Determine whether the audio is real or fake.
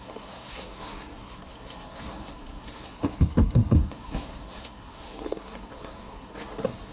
fake